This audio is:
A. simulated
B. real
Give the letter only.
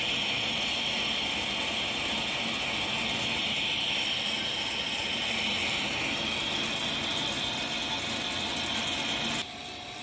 B